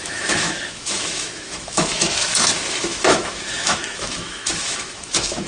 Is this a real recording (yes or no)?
no